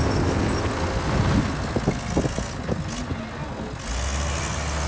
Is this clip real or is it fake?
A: real